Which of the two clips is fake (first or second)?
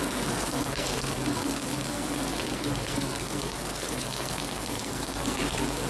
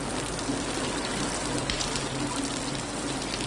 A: first